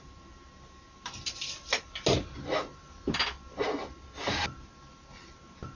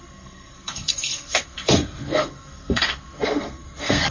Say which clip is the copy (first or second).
second